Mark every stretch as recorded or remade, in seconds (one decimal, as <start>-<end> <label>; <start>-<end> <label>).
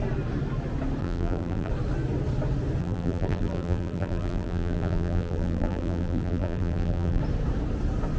0.0-1.0 recorded; 1.0-1.7 remade; 1.7-2.8 recorded; 2.8-7.2 remade; 7.2-8.2 recorded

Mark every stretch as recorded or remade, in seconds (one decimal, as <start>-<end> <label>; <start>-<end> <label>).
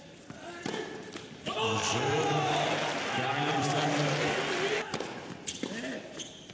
0.0-1.8 recorded; 1.8-2.8 remade; 2.8-3.5 recorded; 3.5-4.1 remade; 4.1-6.5 recorded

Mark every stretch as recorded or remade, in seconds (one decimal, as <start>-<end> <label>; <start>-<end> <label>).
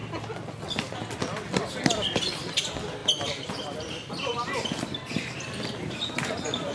0.0-3.0 remade; 3.0-4.1 recorded; 4.1-6.7 remade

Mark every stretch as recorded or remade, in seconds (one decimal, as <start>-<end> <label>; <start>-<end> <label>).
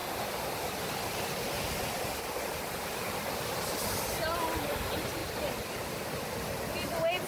0.0-5.2 recorded; 5.2-6.3 remade; 6.3-7.3 recorded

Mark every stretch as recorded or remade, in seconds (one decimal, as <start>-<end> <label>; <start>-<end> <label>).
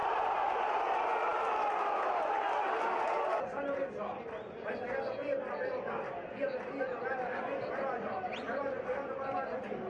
0.0-0.5 remade; 0.5-9.9 recorded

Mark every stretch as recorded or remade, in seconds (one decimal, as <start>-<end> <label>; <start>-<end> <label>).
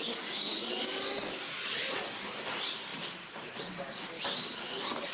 0.0-5.1 recorded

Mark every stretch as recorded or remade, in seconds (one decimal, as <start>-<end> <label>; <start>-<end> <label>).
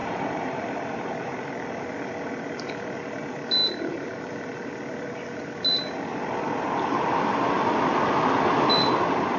0.0-1.4 remade; 1.4-3.6 recorded; 3.6-4.3 remade; 4.3-9.4 recorded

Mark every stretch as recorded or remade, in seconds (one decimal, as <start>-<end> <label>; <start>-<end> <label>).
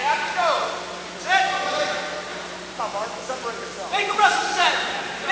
0.0-0.6 remade; 0.6-2.3 recorded; 2.3-2.8 remade; 2.8-3.8 recorded; 3.8-5.3 remade